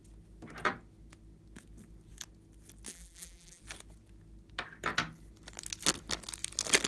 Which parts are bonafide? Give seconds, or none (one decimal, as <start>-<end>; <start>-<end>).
0.0-2.9; 3.6-6.9